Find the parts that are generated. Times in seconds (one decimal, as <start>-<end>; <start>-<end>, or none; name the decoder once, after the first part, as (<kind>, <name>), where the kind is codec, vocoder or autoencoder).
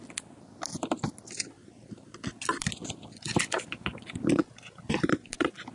0.7-4.1 (vocoder, BigVGAN v2)